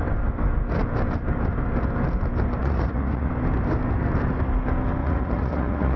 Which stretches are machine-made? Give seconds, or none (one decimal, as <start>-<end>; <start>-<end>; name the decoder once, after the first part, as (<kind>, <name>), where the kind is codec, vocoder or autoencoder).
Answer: 2.6-3.3 (vocoder, Vocos); 5.0-6.0